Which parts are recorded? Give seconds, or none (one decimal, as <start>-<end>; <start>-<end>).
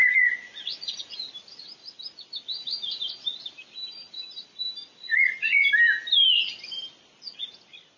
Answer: 1.2-5.0; 5.7-8.0